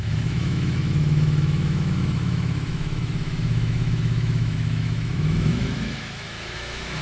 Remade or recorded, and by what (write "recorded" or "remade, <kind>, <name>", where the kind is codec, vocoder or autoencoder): remade, autoencoder, DAC-VAE